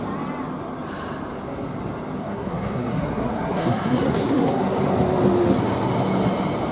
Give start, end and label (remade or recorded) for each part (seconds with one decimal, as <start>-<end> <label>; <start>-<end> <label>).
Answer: 0.0-2.2 recorded; 2.2-4.6 remade; 4.6-6.7 recorded